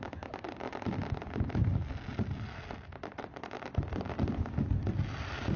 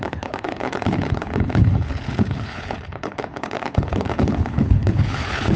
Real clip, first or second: first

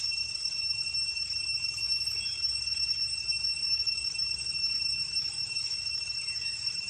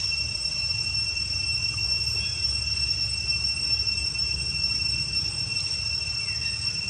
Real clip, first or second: second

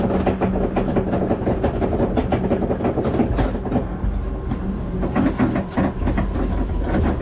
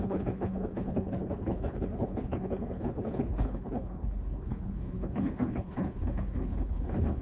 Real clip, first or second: first